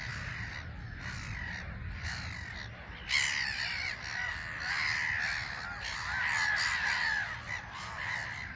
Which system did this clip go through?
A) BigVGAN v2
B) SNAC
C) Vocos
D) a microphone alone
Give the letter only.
D